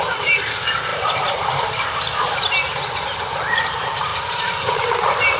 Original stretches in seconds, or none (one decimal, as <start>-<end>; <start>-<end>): 0.0-0.9; 2.4-4.1

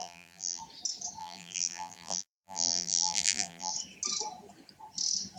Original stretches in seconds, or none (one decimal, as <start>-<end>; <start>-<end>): 0.6-1.2; 3.7-5.4

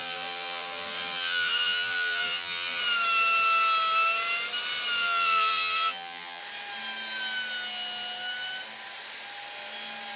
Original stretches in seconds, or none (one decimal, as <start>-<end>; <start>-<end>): 2.8-5.0; 6.4-10.2